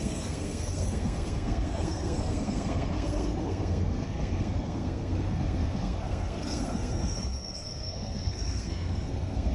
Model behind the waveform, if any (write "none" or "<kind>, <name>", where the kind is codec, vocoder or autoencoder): codec, SNAC